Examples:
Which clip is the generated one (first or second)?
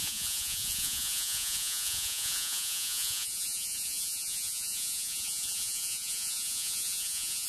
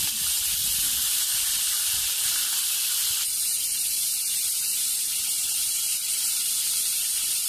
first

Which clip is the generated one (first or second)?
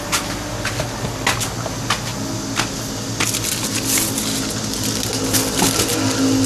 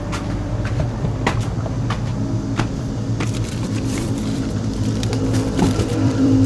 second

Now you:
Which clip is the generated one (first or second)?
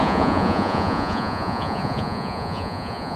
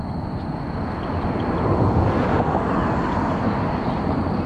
first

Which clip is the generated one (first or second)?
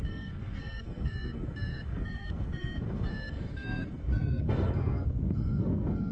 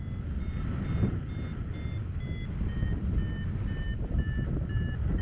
first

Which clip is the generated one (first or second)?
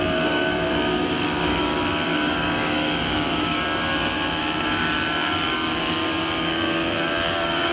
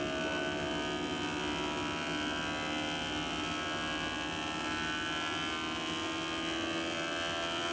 first